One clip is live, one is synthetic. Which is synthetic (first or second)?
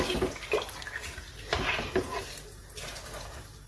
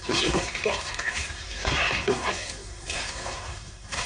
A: second